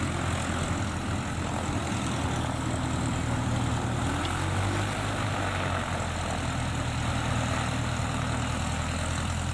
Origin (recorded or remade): recorded